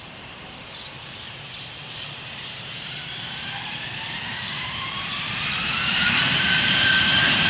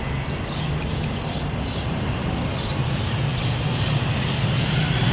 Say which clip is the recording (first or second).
second